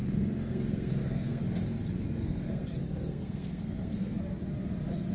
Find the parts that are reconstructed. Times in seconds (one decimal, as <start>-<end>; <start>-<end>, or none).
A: 0.0-1.4; 2.2-4.2